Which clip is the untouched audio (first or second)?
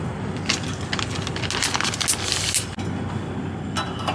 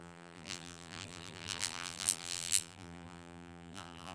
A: first